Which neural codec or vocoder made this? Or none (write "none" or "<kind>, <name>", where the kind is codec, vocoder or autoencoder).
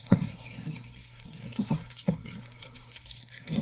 codec, SNAC